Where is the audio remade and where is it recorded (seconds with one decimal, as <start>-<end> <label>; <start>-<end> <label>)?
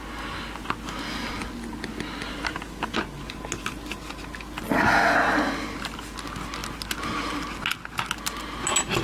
0.0-9.0 recorded